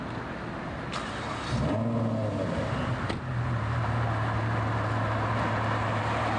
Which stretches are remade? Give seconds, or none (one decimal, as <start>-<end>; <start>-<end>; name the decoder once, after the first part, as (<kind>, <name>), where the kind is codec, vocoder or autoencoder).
none